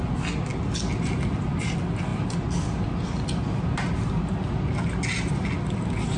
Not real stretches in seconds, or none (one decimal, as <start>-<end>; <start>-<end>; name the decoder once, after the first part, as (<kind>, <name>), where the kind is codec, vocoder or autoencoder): none

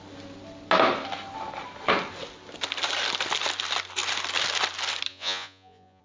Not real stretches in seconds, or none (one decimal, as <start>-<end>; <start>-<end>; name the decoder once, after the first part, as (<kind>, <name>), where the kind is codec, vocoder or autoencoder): 5.1-6.0 (vocoder, Vocos)

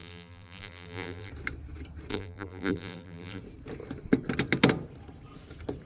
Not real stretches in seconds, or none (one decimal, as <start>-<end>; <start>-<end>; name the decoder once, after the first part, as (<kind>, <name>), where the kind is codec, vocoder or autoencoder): 0.0-1.3 (vocoder, BigVGAN v2); 2.1-3.4

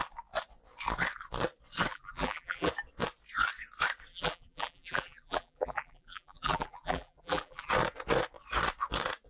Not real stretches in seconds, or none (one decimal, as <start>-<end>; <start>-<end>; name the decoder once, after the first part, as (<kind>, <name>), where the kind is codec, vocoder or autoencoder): 1.9-2.7 (vocoder, BigVGAN v2); 4.1-7.7

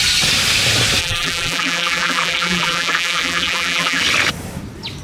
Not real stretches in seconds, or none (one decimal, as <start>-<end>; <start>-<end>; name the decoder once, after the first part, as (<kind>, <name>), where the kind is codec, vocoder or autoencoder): 1.0-4.0 (vocoder, BigVGAN v2)

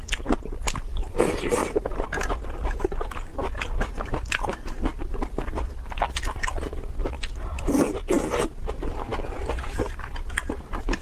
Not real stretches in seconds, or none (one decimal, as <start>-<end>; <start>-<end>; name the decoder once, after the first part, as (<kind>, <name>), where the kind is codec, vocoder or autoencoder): 1.6-2.3 (vocoder, BigVGAN v2); 3.3-4.1; 7.0-7.9